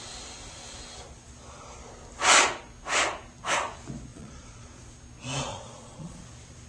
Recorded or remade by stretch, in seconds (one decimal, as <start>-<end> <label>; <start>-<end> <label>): 0.0-4.1 recorded; 4.1-4.7 remade; 4.7-5.5 recorded; 5.5-6.2 remade; 6.2-6.7 recorded